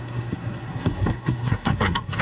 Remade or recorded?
remade